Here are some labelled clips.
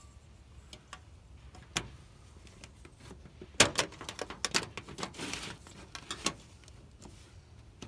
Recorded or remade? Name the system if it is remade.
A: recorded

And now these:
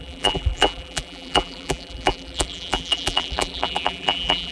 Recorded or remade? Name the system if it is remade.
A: remade, vocoder, BigVGAN v2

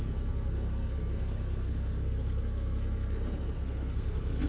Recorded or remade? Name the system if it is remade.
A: remade, codec, SNAC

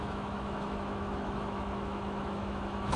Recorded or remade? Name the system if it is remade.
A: remade, autoencoder, DAC-VAE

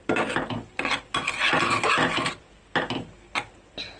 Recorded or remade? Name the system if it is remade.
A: recorded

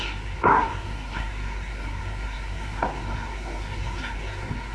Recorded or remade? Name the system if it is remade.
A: remade, codec, SNAC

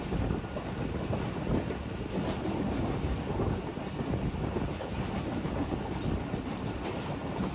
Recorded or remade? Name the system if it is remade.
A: recorded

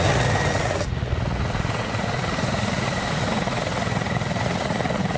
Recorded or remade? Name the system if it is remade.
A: remade, vocoder, Vocos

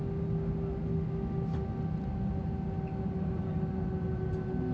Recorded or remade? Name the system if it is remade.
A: recorded